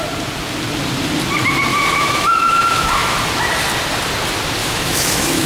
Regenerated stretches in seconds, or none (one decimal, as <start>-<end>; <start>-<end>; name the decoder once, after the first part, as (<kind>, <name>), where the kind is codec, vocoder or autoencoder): 1.7-3.2 (autoencoder, DAC-VAE); 4.6-5.5

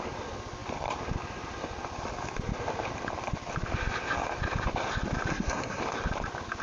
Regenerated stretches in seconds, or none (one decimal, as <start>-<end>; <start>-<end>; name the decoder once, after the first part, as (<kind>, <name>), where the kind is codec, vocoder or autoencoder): 5.3-5.8 (codec, SNAC)

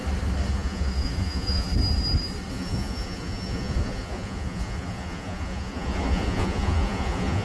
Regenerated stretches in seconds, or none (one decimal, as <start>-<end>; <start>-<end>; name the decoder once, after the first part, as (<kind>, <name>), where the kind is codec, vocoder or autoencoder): 0.5-1.7 (vocoder, Vocos); 2.5-7.4

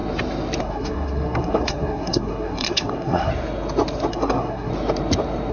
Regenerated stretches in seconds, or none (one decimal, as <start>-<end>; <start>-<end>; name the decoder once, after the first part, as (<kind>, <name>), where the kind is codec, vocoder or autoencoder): 0.6-3.3 (codec, SNAC); 4.1-4.7

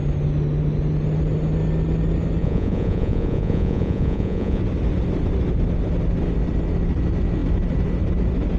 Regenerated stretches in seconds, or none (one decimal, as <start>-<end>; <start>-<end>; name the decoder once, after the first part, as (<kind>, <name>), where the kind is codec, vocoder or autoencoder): 2.4-4.6 (vocoder, Vocos)